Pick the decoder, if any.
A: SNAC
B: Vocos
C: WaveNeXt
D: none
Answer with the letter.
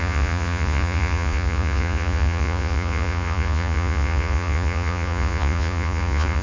B